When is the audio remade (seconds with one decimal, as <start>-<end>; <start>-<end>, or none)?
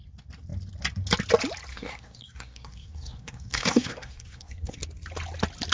1.7-4.8